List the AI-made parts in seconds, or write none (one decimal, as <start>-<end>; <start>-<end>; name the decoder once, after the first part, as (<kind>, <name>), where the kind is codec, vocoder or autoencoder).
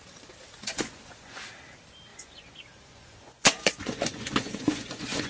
0.6-1.4 (vocoder, Vocos); 2.1-5.3